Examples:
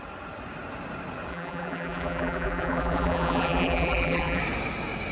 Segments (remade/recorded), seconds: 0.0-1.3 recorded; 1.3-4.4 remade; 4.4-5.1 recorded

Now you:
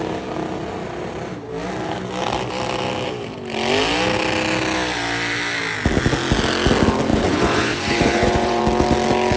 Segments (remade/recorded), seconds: 0.0-7.1 recorded; 7.1-8.6 remade; 8.6-9.4 recorded

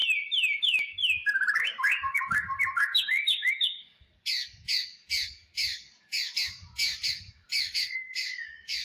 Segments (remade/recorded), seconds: 0.0-0.6 recorded; 0.6-1.0 remade; 1.0-1.6 recorded; 1.6-8.8 remade

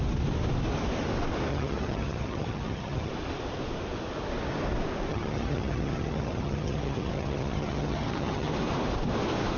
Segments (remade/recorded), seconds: 0.0-1.5 recorded; 1.5-3.1 remade; 3.1-5.1 recorded; 5.1-8.5 remade; 8.5-9.6 recorded

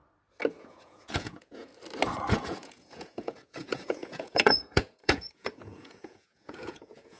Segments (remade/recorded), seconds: 0.0-0.6 recorded; 0.6-1.7 remade; 1.7-2.3 recorded; 2.3-7.2 remade

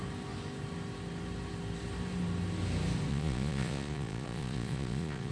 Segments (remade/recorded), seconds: 0.0-3.1 recorded; 3.1-5.3 remade